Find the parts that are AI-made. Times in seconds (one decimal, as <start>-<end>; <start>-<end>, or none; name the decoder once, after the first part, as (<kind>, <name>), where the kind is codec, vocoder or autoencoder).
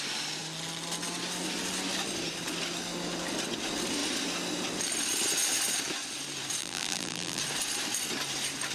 6.6-7.4 (vocoder, BigVGAN v2)